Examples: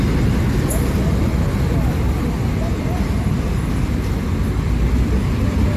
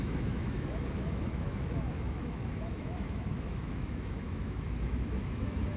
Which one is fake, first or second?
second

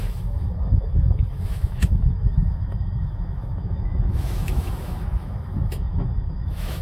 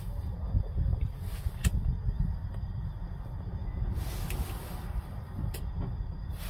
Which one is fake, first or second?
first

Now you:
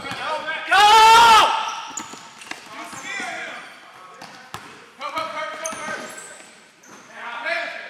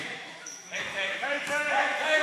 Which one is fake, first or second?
second